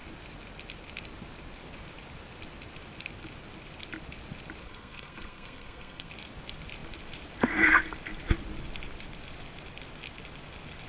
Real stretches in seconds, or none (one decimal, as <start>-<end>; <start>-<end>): 0.0-4.6; 6.1-10.9